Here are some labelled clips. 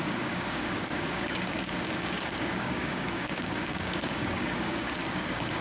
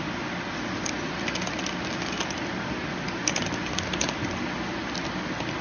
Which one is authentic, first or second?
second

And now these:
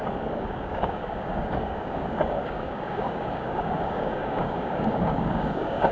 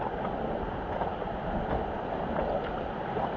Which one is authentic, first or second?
second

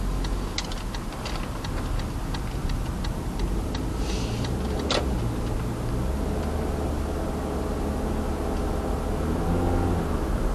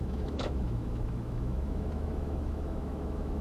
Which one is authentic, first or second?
first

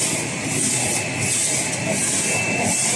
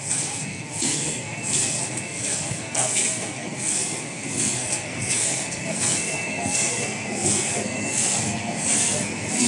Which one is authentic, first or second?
first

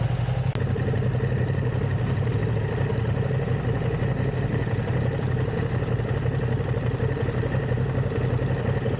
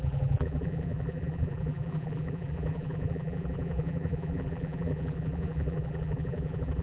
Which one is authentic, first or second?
first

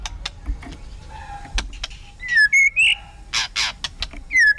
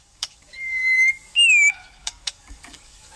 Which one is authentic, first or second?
first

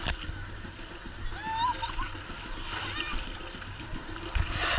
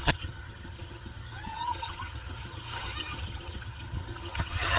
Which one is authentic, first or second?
first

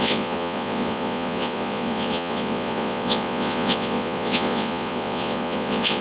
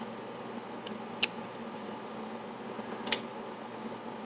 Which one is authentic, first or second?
second